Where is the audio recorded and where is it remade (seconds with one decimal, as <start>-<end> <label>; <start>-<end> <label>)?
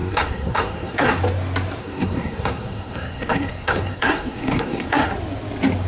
0.0-1.2 remade; 1.2-1.8 recorded; 1.8-5.1 remade; 5.1-5.9 recorded